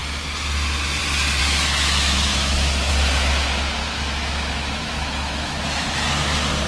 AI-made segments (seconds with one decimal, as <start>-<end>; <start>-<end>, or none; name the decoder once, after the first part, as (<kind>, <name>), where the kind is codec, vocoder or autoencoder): 1.4-2.9 (autoencoder, DAC-VAE); 3.8-6.1